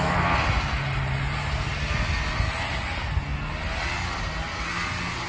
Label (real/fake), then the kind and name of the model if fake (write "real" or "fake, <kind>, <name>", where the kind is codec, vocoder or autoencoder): real